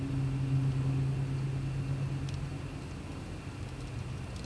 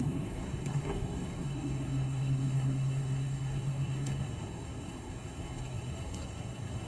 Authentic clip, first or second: first